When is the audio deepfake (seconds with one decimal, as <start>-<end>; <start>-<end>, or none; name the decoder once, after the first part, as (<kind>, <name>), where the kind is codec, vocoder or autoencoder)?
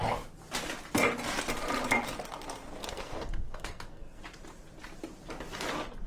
2.8-4.2 (codec, SNAC)